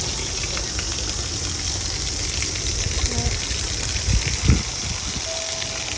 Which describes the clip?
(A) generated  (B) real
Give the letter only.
B